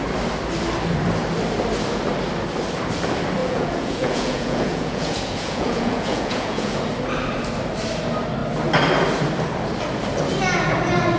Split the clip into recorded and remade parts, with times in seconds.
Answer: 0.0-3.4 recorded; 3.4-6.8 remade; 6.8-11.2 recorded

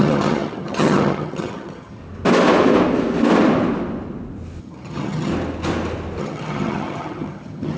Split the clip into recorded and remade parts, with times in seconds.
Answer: 0.0-2.0 remade; 2.0-4.6 recorded; 4.6-5.3 remade; 5.3-6.2 recorded; 6.2-7.8 remade

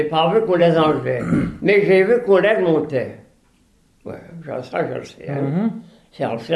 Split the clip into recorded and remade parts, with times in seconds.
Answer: 0.0-6.6 recorded